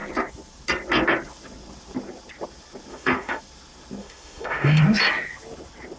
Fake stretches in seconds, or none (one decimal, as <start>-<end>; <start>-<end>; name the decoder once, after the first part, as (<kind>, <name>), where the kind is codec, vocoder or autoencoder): 2.9-3.4 (autoencoder, DAC-VAE); 4.0-4.8